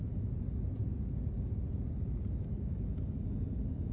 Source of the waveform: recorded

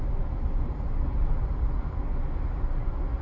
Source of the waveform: recorded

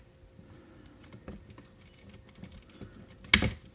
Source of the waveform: recorded